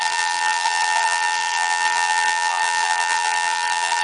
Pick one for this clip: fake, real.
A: fake